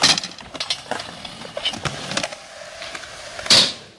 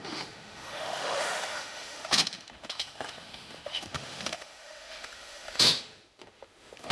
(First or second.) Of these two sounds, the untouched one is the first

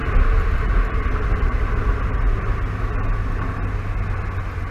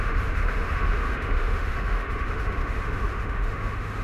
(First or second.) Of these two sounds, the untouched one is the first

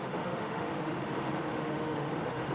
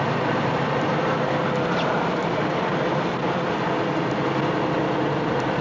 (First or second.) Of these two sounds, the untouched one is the second